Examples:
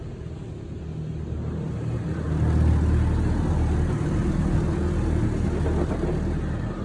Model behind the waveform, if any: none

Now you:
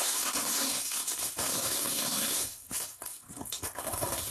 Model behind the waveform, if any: codec, SNAC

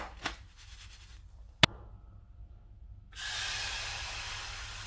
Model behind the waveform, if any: none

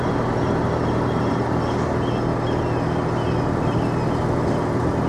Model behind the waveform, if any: none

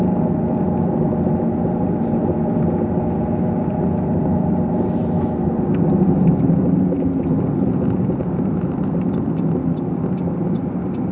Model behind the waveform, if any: none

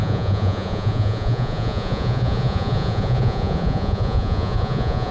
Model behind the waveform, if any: vocoder, Vocos